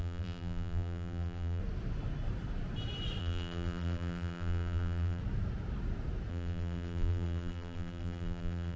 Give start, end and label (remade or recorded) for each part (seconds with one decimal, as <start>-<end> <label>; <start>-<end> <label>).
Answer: 0.0-1.6 remade; 1.6-3.2 recorded; 3.2-5.2 remade; 5.2-6.3 recorded; 6.3-8.8 remade